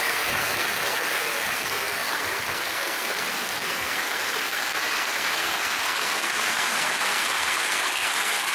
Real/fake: fake